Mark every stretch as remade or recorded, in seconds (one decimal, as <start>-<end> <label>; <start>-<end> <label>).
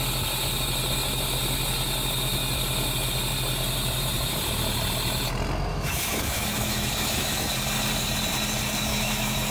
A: 0.0-5.7 recorded; 5.7-7.5 remade; 7.5-8.9 recorded; 8.9-9.5 remade